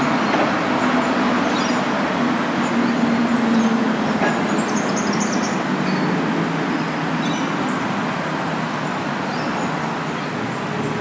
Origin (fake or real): real